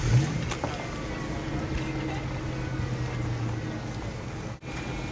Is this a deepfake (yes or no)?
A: no